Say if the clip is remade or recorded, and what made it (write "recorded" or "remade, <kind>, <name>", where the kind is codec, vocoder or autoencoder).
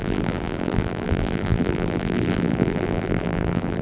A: remade, vocoder, BigVGAN v2